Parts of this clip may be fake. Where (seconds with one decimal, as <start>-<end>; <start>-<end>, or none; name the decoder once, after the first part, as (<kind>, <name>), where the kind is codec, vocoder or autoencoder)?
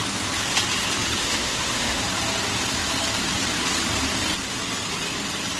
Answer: 1.2-2.0 (autoencoder, DAC-VAE)